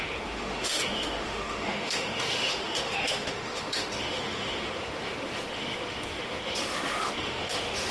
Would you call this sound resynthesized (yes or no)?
yes